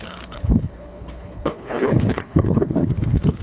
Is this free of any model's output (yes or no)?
no